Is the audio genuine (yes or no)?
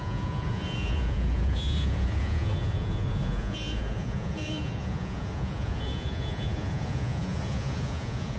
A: no